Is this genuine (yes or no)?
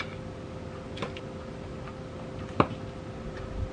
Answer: yes